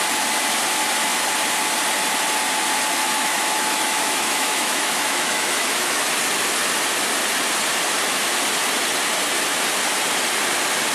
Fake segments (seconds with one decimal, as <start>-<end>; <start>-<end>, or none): 3.0-6.1